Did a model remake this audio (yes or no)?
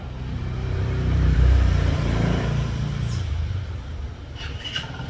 yes